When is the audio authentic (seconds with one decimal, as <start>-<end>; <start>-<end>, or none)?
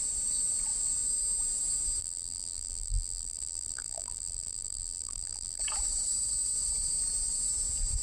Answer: 0.0-2.0; 5.6-8.0